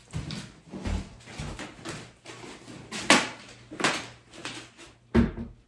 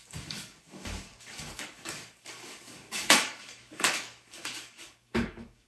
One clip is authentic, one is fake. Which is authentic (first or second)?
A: first